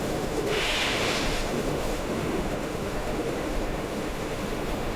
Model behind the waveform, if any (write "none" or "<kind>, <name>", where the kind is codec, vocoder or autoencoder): autoencoder, DAC-VAE